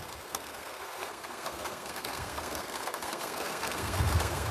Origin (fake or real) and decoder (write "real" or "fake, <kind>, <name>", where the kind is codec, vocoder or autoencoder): fake, codec, SNAC